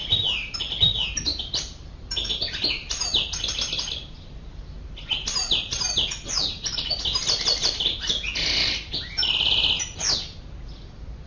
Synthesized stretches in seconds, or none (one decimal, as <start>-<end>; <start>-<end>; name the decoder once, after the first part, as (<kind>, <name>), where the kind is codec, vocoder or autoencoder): none